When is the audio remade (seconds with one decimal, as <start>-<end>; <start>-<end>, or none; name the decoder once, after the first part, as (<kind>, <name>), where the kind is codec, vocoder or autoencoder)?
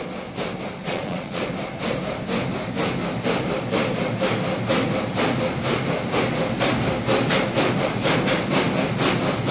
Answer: 0.8-1.4 (vocoder, Vocos)